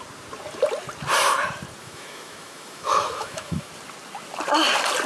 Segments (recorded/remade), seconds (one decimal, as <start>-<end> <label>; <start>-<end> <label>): 0.0-1.8 recorded; 1.8-3.7 remade; 3.7-5.1 recorded